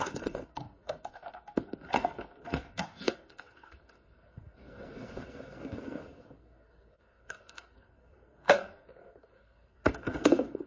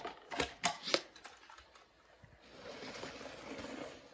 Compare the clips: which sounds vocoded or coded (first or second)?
first